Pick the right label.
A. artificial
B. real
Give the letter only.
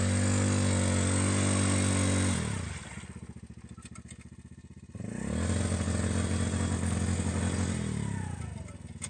B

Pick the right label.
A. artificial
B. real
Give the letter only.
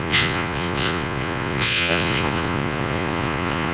A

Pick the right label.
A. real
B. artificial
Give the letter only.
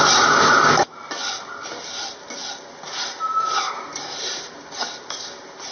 A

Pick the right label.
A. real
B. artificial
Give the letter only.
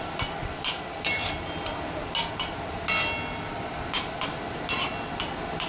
A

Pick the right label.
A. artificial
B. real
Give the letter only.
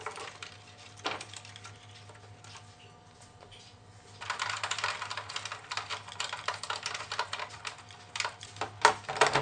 B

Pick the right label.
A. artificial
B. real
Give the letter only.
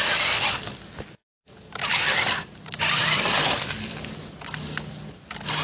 B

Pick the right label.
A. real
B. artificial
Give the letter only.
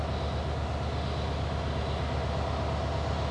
A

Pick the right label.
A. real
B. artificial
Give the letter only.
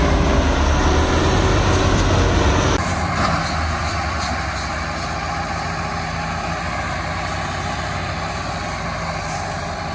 A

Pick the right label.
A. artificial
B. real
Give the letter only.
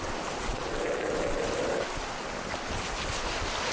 B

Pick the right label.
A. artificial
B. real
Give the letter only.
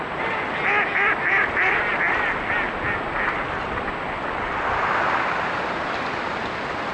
B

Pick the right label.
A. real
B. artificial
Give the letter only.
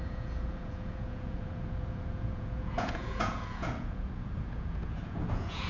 B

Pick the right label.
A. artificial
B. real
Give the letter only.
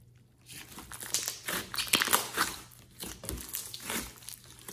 B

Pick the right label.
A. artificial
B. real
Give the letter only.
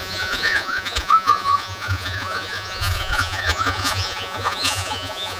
A